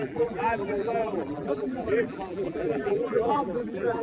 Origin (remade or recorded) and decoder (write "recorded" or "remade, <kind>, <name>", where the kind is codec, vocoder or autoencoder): remade, vocoder, BigVGAN v2